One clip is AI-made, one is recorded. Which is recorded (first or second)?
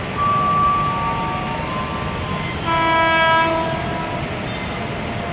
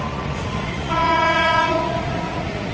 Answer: first